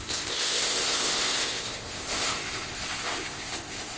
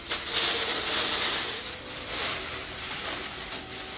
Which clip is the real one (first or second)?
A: second